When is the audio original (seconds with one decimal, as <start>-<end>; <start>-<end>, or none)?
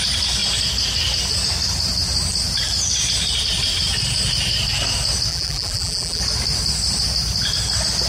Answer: 0.0-5.3; 6.2-8.1